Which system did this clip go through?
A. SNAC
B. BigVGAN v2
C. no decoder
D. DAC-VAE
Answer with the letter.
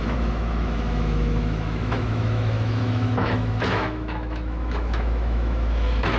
D